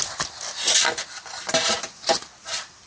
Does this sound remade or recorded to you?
recorded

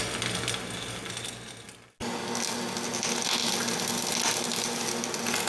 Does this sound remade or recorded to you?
recorded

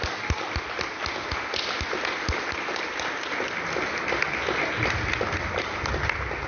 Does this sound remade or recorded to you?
recorded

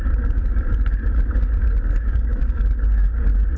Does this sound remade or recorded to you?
recorded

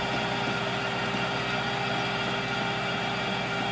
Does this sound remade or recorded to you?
recorded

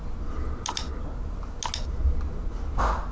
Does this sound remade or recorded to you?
recorded